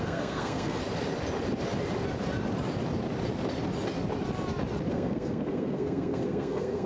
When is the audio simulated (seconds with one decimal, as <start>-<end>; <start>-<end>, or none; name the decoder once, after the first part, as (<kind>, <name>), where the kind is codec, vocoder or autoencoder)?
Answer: 0.0-0.8 (codec, SNAC); 4.9-6.9